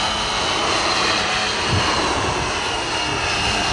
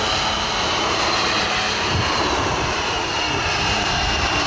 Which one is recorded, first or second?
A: first